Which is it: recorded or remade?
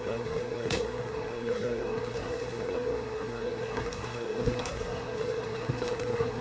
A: remade